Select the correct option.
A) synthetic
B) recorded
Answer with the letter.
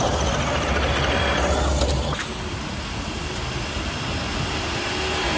B